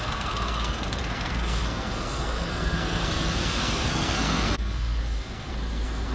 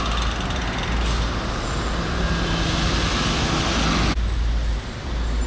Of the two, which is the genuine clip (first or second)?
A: second